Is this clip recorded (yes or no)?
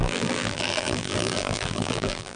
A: no